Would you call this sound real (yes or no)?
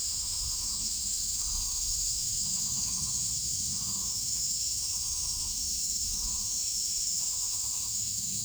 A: no